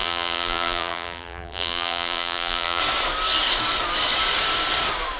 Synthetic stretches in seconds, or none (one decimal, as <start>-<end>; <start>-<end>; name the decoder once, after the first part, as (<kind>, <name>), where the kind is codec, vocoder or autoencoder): 0.0-2.8 (vocoder, BigVGAN v2)